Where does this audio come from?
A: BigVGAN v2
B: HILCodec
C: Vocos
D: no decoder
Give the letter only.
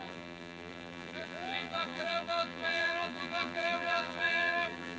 A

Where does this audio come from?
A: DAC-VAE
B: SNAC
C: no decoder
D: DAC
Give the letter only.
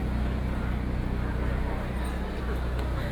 C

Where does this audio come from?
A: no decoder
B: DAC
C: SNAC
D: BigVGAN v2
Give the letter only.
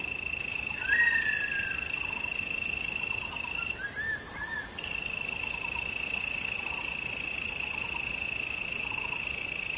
A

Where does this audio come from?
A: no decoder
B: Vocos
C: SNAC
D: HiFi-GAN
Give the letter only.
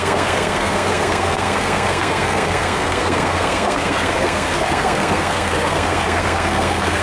C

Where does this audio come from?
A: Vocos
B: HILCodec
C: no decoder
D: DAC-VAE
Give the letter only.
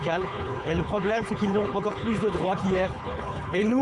B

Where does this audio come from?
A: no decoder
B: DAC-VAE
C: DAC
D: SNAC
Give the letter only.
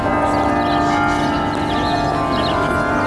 A